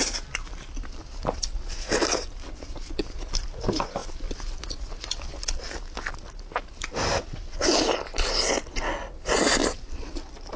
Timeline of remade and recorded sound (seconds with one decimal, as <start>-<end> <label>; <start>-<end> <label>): 0.0-2.7 remade; 2.7-4.0 recorded; 4.0-4.9 remade; 4.9-9.6 recorded; 9.6-10.6 remade